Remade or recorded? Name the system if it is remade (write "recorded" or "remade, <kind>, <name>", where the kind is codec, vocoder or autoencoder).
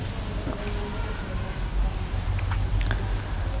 recorded